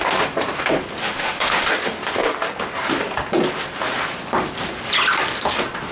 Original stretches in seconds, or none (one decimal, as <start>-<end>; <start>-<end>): 0.0-1.0; 1.7-5.9